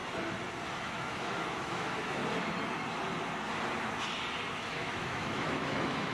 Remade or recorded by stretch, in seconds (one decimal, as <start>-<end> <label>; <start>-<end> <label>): 0.0-0.8 recorded; 0.8-2.2 remade; 2.2-4.5 recorded; 4.5-6.1 remade